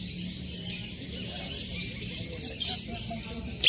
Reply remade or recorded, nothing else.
recorded